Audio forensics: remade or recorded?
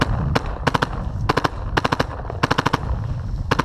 recorded